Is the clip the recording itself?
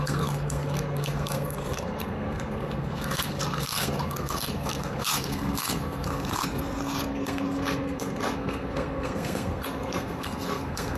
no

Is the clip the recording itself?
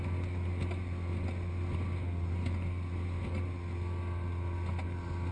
yes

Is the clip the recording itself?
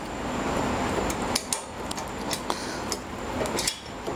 yes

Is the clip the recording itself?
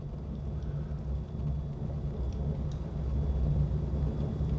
yes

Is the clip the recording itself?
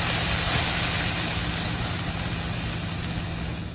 yes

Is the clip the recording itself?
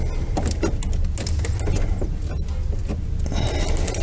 yes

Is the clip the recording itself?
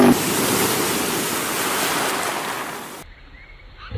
yes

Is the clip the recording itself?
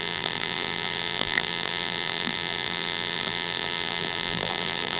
no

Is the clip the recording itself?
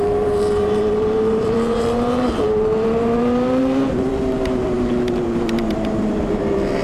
no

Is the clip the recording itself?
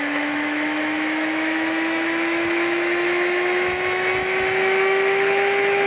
no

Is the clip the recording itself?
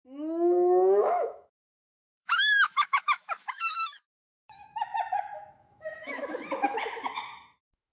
no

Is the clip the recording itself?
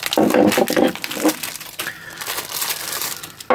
yes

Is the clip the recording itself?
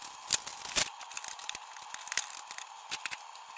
yes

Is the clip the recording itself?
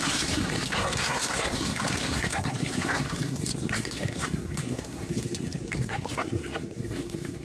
no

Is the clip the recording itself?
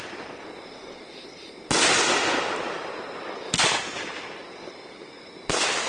yes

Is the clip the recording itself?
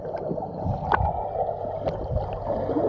yes